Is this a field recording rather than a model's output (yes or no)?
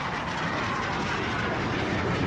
yes